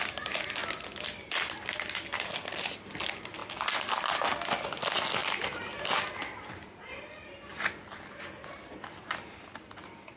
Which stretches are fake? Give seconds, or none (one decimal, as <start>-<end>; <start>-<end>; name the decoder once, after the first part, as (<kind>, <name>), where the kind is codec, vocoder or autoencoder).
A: none